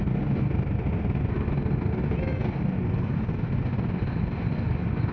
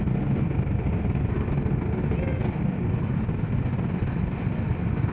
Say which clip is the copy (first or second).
second